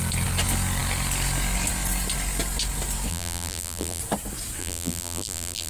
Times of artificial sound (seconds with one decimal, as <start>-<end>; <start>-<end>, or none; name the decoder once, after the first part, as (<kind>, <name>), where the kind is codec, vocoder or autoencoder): 3.1-4.0 (vocoder, BigVGAN v2); 4.6-5.7